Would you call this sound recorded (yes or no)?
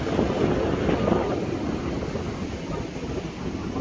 yes